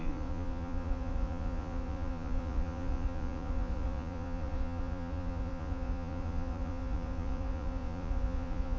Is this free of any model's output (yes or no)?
no